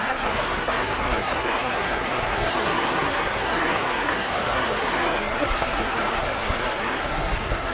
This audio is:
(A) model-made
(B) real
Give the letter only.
A